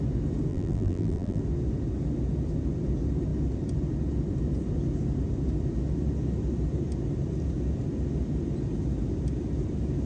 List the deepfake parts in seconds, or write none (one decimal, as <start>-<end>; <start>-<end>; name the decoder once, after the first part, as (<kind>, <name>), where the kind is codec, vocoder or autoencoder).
0.5-1.4 (vocoder, BigVGAN v2)